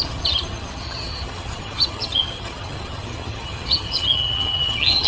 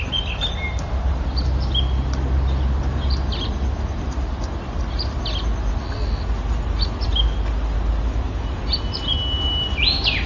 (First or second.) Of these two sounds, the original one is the second